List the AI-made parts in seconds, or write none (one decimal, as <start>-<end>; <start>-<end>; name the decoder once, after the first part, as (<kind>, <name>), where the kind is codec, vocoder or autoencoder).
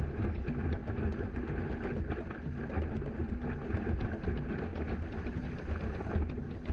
4.7-5.4 (vocoder, BigVGAN v2)